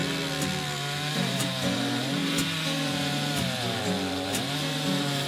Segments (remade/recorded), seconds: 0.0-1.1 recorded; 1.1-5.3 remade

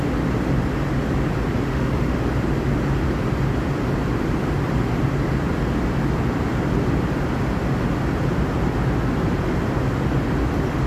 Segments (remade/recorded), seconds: 0.0-1.7 recorded; 1.7-2.2 remade; 2.2-10.9 recorded

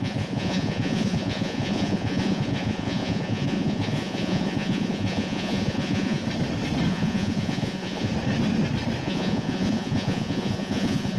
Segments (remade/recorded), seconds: 0.0-6.2 remade; 6.2-6.9 recorded; 6.9-8.1 remade; 8.1-9.0 recorded; 9.0-11.2 remade

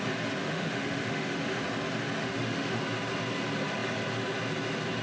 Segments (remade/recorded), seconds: 0.0-0.4 recorded; 0.4-1.4 remade; 1.4-2.2 recorded; 2.2-2.8 remade; 2.8-5.0 recorded

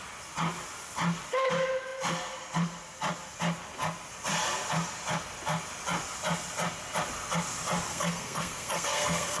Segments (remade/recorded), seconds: 0.0-7.9 recorded; 7.9-9.4 remade

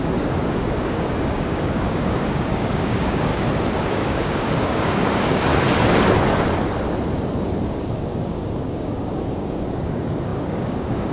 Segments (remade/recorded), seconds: 0.0-3.3 remade; 3.3-3.9 recorded; 3.9-5.5 remade; 5.5-7.4 recorded; 7.4-11.1 remade